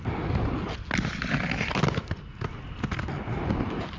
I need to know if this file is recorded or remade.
recorded